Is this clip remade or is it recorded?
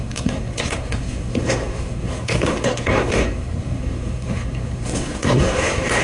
remade